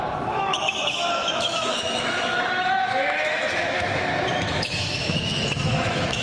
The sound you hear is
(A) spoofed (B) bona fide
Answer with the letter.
A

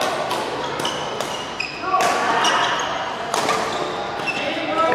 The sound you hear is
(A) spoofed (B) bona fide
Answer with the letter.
B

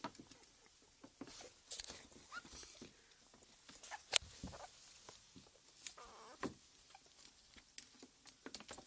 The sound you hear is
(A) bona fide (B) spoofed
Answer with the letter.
A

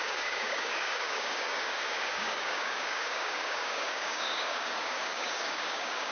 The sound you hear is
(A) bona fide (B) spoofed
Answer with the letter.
B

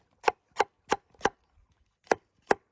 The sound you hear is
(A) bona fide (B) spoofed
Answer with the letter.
A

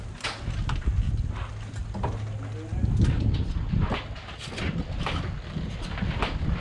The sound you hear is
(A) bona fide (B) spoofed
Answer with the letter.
A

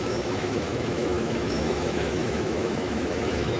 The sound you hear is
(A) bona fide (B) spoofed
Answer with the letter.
B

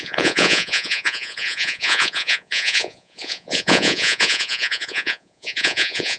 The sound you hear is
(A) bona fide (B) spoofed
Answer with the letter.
B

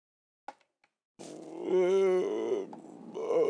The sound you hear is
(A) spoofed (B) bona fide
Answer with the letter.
B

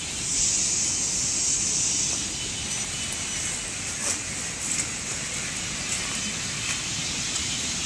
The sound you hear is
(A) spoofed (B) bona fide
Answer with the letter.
B